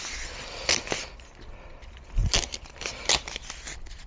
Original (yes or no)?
yes